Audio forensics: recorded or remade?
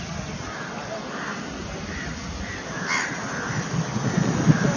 recorded